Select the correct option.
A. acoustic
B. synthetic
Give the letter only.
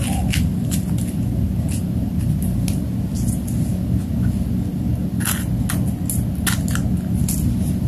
A